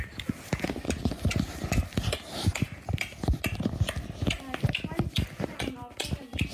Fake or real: real